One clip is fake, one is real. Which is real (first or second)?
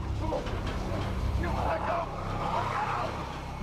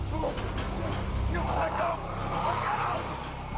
second